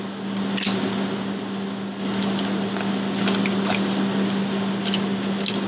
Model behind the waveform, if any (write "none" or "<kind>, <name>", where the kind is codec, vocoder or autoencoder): none